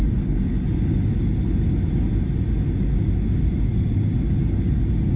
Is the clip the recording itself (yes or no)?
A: yes